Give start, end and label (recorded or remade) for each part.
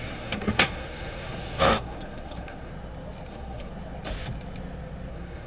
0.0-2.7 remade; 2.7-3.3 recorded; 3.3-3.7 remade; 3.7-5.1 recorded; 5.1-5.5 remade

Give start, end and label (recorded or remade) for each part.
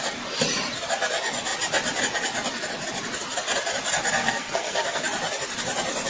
0.0-4.2 recorded; 4.2-5.0 remade; 5.0-6.1 recorded